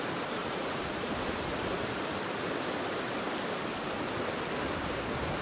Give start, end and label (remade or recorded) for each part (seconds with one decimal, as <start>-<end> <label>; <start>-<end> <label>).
0.0-0.4 recorded; 0.4-1.1 remade; 1.1-5.4 recorded